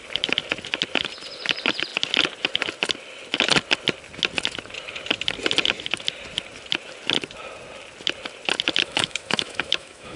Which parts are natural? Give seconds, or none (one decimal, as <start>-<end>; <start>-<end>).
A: 0.0-8.8

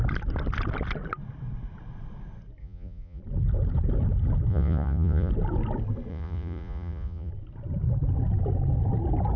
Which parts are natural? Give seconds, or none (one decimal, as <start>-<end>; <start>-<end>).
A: 0.0-2.6; 3.2-4.5; 5.3-6.1; 7.3-9.4